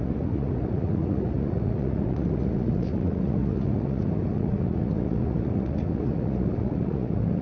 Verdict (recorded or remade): remade